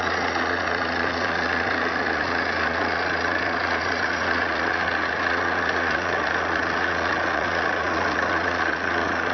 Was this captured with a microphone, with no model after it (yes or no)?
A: no